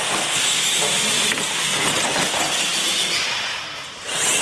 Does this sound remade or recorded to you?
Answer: recorded